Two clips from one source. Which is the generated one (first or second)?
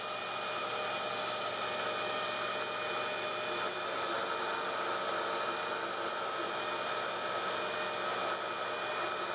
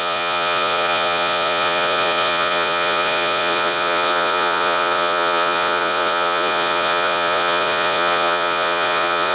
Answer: second